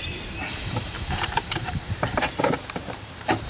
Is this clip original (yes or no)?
no